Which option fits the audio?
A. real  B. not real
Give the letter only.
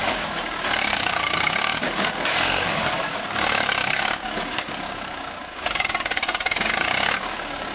B